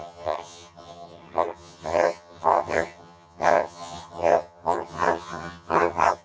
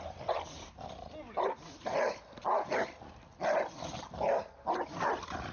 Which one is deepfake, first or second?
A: first